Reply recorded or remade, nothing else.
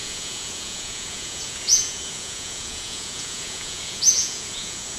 remade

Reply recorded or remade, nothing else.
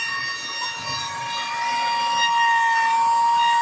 recorded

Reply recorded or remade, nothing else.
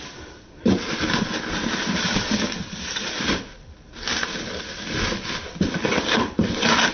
recorded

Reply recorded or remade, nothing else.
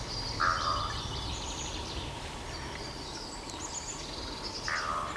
recorded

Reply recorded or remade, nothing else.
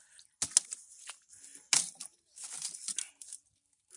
recorded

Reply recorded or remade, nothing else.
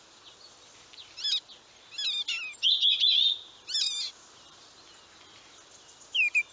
recorded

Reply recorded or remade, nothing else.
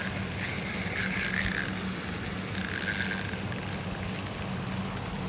recorded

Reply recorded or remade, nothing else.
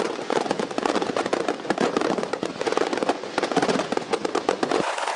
remade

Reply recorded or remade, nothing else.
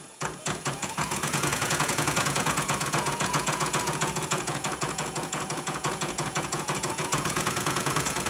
remade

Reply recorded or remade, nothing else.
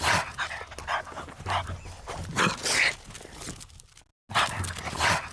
recorded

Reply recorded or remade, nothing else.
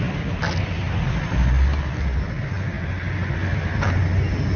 recorded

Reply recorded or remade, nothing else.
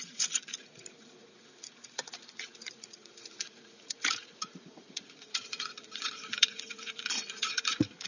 remade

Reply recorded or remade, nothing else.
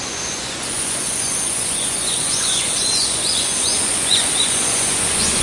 remade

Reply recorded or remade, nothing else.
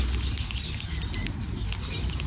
recorded